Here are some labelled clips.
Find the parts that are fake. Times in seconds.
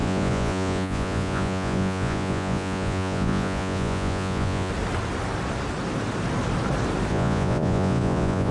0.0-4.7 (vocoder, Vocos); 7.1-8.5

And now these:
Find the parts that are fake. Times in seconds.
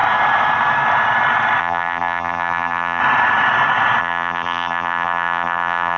1.6-3.0 (vocoder, BigVGAN v2); 4.0-6.0